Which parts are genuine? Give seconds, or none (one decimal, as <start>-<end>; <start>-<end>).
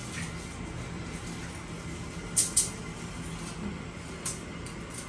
0.0-5.1